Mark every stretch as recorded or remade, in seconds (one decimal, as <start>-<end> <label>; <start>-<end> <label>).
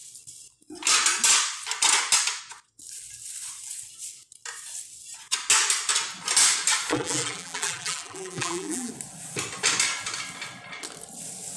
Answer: 0.0-6.9 recorded; 6.9-8.9 remade; 8.9-11.6 recorded